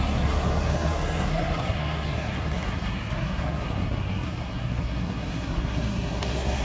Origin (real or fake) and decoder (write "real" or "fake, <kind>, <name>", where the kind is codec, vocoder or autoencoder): fake, codec, SNAC